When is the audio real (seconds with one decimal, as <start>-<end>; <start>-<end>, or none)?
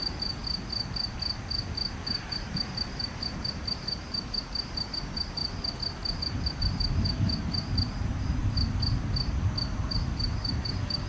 0.4-2.0; 5.4-6.5; 8.4-9.9